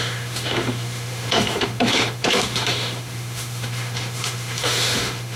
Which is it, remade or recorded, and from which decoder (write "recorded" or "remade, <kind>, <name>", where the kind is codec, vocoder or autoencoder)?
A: remade, autoencoder, DAC-VAE